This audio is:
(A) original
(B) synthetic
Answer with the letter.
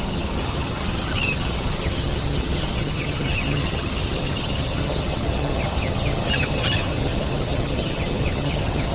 B